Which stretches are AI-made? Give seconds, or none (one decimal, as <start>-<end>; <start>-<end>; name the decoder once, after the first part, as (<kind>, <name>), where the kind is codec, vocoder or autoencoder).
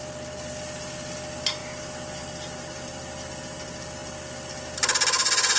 none